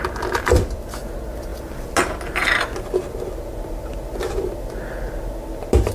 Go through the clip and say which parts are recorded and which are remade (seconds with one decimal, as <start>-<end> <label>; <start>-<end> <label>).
0.0-5.9 recorded